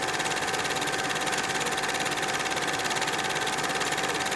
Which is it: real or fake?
real